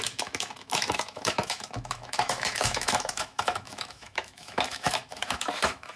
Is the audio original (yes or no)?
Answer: no